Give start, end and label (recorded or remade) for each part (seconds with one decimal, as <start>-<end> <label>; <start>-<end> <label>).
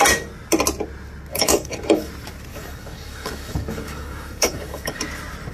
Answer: 0.0-1.3 recorded; 1.3-2.1 remade; 2.1-2.5 recorded; 2.5-5.0 remade; 5.0-5.5 recorded